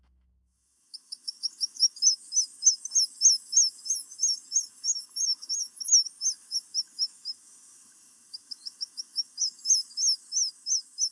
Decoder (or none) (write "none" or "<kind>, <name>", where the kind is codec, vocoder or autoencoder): autoencoder, DAC-VAE